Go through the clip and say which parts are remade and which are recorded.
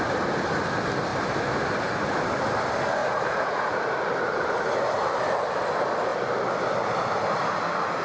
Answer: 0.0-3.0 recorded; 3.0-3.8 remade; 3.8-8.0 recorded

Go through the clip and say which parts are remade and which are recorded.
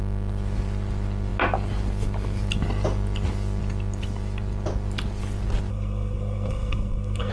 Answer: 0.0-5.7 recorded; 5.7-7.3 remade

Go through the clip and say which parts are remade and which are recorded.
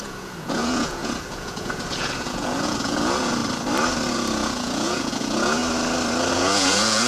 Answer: 0.0-3.4 remade; 3.4-4.1 recorded; 4.1-5.6 remade; 5.6-6.3 recorded; 6.3-7.1 remade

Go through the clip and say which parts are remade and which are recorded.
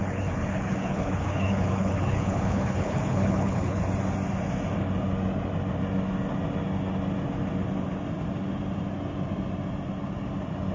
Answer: 0.0-3.8 remade; 3.8-10.7 recorded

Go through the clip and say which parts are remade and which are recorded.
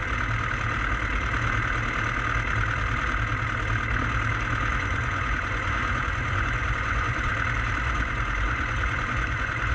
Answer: 0.0-4.7 recorded; 4.7-7.3 remade; 7.3-7.8 recorded; 7.8-9.7 remade